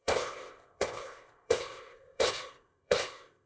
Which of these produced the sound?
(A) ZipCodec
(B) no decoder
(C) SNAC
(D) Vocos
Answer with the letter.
A